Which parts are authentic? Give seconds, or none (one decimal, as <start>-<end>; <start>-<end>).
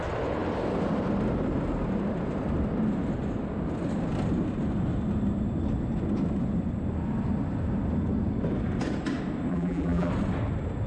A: 0.0-9.5; 10.1-10.9